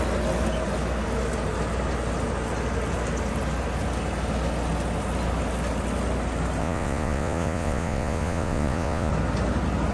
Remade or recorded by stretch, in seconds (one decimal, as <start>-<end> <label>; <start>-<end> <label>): 0.0-6.6 recorded; 6.6-9.1 remade; 9.1-9.9 recorded